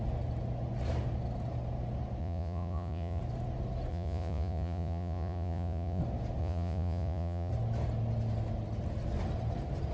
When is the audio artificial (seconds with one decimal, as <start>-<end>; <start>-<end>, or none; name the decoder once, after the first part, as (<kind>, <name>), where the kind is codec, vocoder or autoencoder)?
2.2-3.2 (vocoder, Vocos); 3.9-6.0; 6.4-7.5